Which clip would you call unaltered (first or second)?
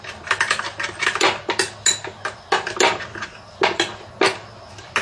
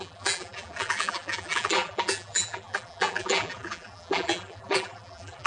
first